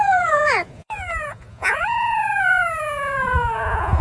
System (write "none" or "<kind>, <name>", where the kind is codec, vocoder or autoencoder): vocoder, Vocos